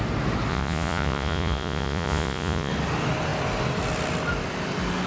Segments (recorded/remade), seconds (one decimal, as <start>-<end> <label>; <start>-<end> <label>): 0.0-0.5 recorded; 0.5-2.7 remade; 2.7-5.1 recorded